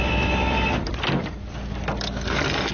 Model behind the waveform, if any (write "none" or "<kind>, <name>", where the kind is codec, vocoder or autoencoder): none